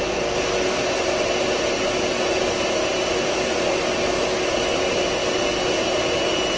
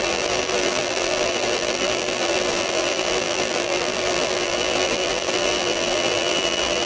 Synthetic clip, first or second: second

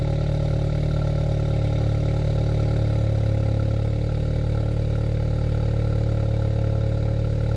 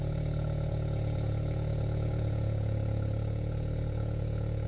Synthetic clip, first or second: second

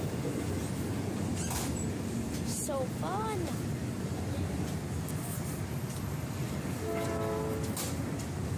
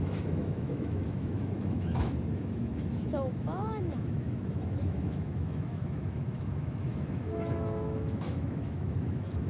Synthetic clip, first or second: second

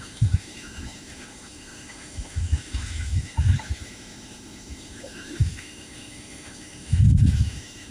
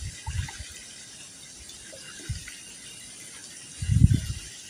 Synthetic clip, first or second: first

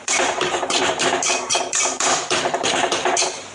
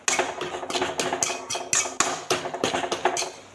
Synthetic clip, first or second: first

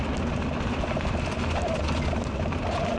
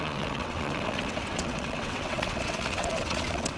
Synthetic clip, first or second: second